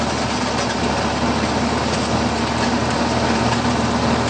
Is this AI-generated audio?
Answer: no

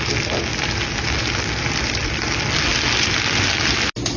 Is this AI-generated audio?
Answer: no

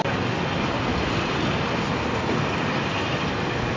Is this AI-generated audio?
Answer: no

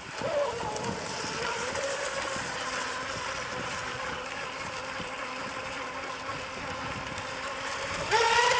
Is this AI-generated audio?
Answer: no